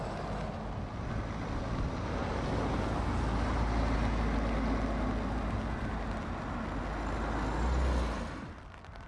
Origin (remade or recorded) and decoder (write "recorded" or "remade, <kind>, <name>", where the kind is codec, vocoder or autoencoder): recorded